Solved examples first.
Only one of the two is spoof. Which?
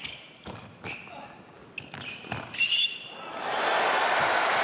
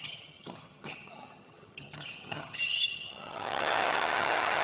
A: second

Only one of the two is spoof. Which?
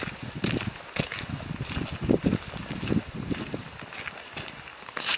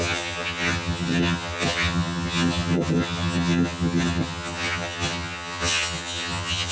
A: second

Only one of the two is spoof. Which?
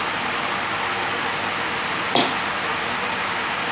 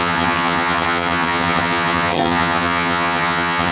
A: second